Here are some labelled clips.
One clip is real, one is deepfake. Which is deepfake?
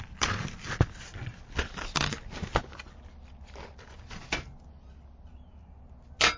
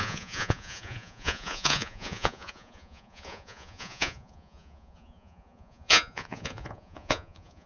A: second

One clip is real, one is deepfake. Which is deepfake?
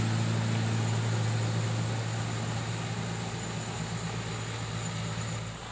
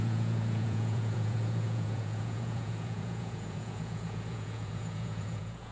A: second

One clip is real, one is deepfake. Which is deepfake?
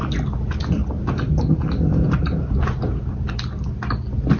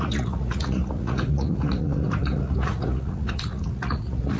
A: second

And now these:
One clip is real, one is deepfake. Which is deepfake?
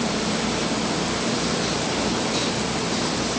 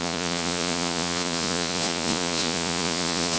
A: second